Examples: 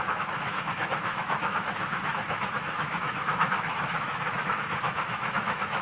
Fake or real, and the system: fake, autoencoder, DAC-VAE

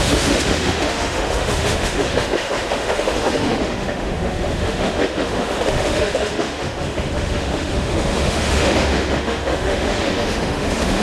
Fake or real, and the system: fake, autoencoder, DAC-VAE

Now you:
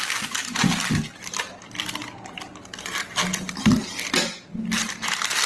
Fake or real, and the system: real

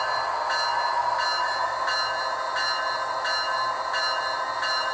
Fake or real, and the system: real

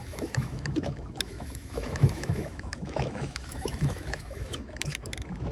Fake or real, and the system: fake, autoencoder, DAC-VAE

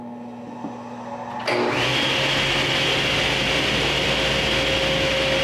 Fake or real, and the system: real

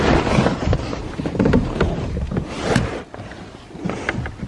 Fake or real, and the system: real